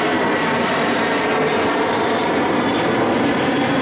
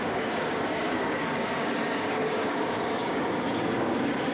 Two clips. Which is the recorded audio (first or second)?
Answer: first